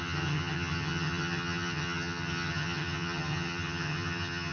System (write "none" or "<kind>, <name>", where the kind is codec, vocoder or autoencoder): vocoder, HiFi-GAN